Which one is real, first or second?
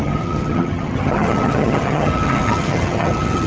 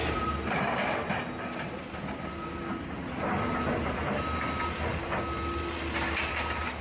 second